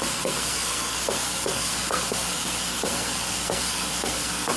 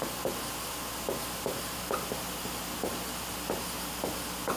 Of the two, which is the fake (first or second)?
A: first